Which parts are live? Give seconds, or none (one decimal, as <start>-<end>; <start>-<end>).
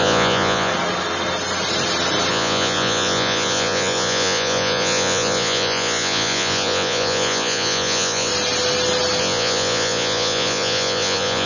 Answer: 0.7-2.3; 8.3-9.2